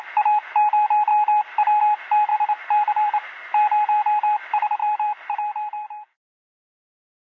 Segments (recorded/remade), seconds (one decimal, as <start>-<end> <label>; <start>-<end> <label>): 0.0-2.3 recorded; 2.3-3.5 remade; 3.5-4.8 recorded; 4.8-6.6 remade; 6.6-7.2 recorded